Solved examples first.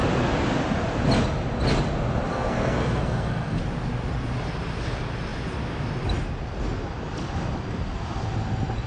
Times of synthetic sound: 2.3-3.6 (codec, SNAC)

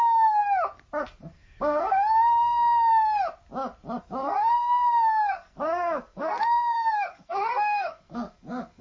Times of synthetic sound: 0.0-0.4 (codec, SNAC); 1.0-2.9; 4.0-8.8

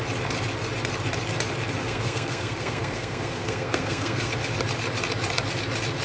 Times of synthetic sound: 1.8-4.3 (codec, SNAC)

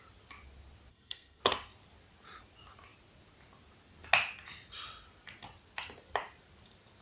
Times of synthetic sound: 0.9-1.4 (codec, SNAC)

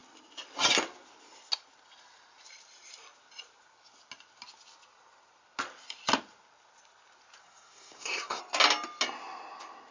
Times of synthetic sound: 7.4-8.4 (codec, SNAC)

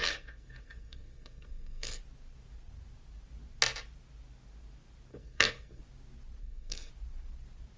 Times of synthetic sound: 0.0-2.0 (codec, SNAC); 5.1-5.8; 6.4-6.9